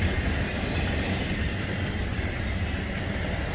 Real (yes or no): yes